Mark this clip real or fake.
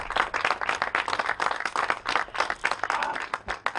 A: real